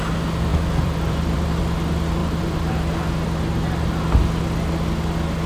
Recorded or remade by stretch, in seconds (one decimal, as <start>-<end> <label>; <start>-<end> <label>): 0.0-0.5 recorded; 0.5-1.6 remade; 1.6-2.2 recorded; 2.2-2.7 remade; 2.7-5.5 recorded